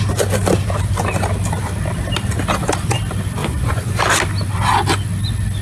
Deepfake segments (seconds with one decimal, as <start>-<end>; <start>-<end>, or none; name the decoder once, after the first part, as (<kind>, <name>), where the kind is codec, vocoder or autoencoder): 3.4-3.9 (vocoder, Vocos)